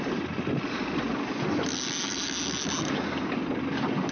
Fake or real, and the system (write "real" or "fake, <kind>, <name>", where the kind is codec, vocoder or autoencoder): real